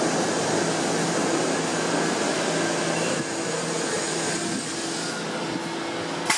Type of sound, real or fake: real